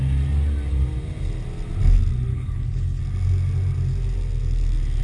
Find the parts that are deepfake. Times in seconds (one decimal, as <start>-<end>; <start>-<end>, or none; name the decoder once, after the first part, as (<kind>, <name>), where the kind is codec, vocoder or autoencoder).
2.3-3.0 (codec, HILCodec)